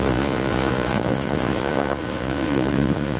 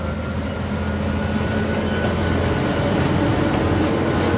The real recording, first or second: second